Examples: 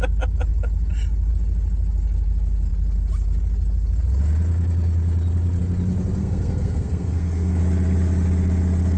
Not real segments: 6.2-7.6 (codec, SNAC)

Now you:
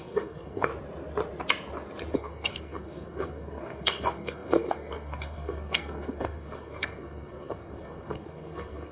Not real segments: 0.0-0.7 (codec, SNAC); 2.1-8.9

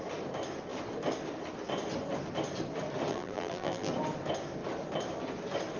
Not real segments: 3.1-3.9 (vocoder, BigVGAN v2)

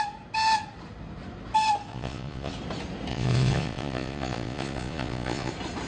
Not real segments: 1.9-2.5 (vocoder, Vocos); 3.1-5.5